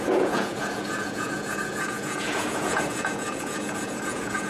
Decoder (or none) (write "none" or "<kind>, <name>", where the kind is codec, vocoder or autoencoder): vocoder, Vocos